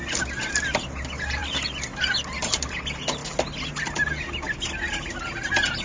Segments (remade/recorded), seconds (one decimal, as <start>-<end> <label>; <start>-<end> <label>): 0.0-1.4 recorded; 1.4-2.0 remade; 2.0-5.8 recorded